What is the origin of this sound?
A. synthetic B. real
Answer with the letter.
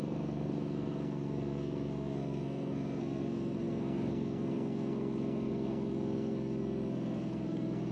A